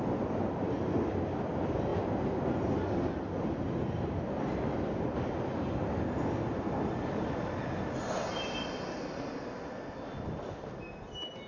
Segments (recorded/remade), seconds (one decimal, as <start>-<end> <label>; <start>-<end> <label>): 0.0-11.5 recorded